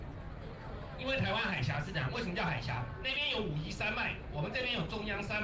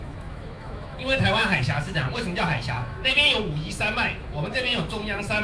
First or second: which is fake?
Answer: second